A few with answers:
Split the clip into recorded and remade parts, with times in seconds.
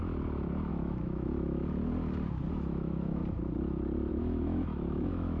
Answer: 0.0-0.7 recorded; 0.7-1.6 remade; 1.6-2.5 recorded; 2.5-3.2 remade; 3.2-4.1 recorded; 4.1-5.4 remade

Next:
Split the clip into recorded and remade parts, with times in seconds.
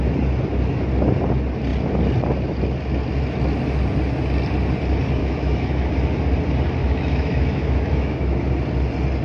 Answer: 0.0-5.2 recorded; 5.2-5.9 remade; 5.9-6.8 recorded; 6.8-8.4 remade; 8.4-9.2 recorded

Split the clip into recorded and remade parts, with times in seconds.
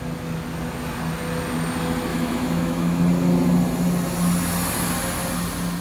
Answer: 0.0-2.1 recorded; 2.1-3.0 remade; 3.0-5.8 recorded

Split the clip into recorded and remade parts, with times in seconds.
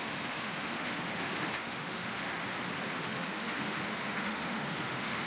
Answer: 0.0-2.4 remade; 2.4-2.9 recorded; 2.9-5.3 remade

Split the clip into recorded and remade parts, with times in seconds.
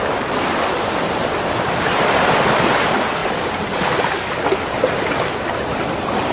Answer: 0.0-6.3 recorded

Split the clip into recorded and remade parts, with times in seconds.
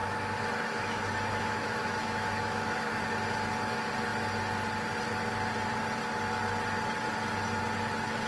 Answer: 0.0-3.0 remade; 3.0-8.3 recorded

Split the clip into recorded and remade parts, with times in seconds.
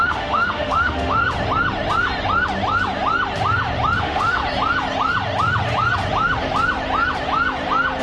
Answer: 0.0-1.2 remade; 1.2-4.0 recorded; 4.0-4.4 remade; 4.4-8.0 recorded